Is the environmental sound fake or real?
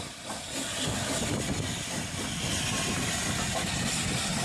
real